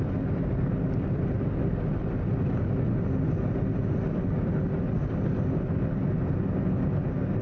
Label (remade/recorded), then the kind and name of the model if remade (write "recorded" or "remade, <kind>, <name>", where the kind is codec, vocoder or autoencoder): recorded